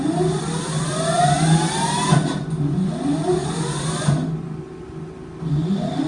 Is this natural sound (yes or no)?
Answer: yes